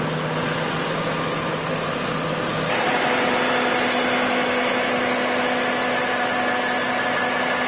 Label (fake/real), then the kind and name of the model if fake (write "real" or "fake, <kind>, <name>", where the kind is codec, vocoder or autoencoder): real